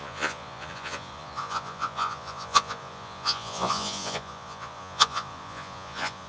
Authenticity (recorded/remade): remade